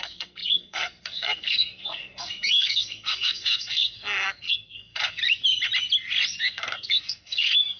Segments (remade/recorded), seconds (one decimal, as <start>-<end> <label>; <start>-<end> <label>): 0.0-5.2 remade; 5.2-6.4 recorded; 6.4-7.8 remade